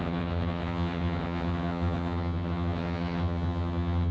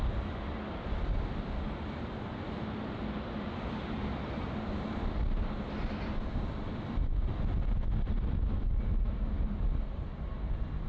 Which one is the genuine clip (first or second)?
second